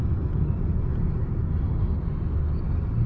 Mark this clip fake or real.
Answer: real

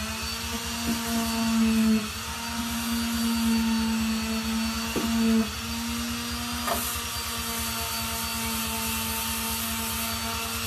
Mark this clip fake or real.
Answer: real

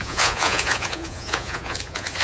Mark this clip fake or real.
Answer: fake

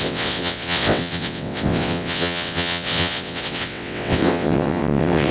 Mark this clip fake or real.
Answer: fake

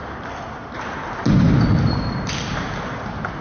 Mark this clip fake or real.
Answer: real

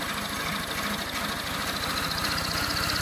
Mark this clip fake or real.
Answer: real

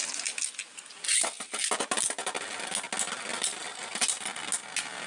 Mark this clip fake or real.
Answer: real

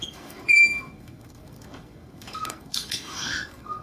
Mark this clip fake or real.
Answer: fake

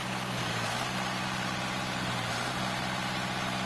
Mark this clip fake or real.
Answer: real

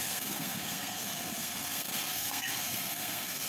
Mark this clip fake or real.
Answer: fake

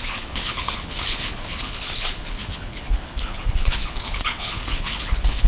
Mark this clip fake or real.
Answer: fake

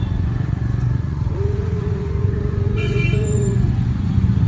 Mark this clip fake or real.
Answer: fake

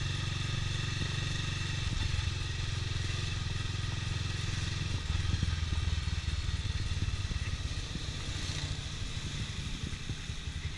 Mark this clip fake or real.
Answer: real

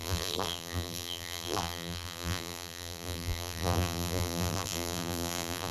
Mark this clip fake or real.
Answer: fake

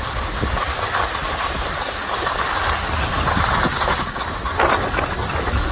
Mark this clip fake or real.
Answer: real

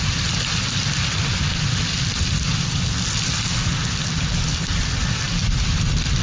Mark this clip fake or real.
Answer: real